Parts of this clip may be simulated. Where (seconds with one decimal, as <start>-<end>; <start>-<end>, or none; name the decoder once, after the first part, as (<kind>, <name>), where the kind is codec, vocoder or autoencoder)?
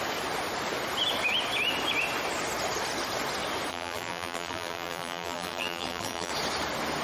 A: 3.7-6.3 (vocoder, BigVGAN v2)